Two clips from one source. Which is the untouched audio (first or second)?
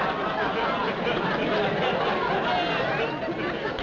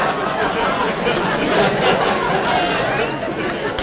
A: first